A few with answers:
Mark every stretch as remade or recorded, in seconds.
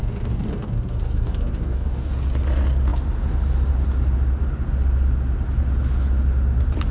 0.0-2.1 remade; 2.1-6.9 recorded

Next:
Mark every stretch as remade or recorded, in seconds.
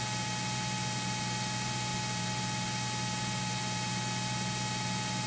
0.0-5.3 recorded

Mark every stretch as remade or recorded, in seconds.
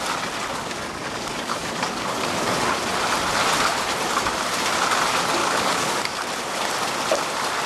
0.0-0.6 recorded; 0.6-2.8 remade; 2.8-5.4 recorded; 5.4-6.2 remade; 6.2-7.7 recorded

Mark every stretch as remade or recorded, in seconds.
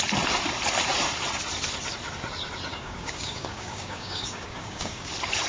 0.0-2.7 recorded; 2.7-5.1 remade; 5.1-5.5 recorded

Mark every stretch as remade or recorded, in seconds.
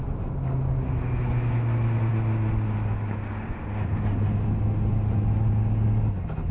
0.0-6.5 recorded